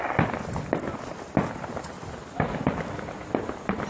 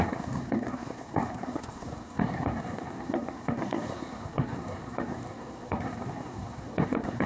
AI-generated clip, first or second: second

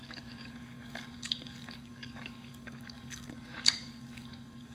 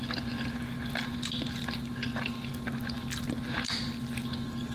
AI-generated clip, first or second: first